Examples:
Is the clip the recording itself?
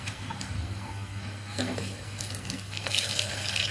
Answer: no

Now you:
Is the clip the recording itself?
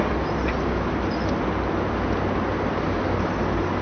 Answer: yes